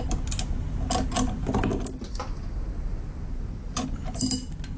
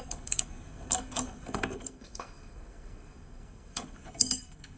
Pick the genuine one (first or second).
first